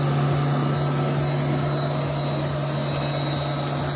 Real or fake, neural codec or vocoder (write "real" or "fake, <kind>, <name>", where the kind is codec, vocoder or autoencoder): real